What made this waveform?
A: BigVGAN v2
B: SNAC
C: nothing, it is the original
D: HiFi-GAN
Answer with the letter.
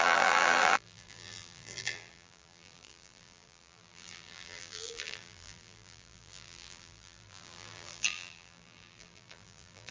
A